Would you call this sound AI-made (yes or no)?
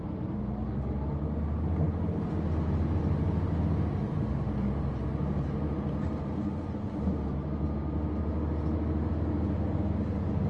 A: no